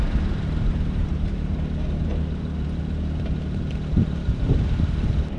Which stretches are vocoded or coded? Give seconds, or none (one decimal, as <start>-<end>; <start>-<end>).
1.0-1.5; 2.1-5.4